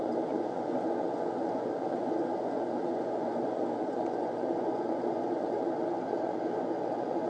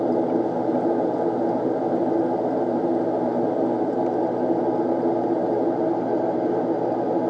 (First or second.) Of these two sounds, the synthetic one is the first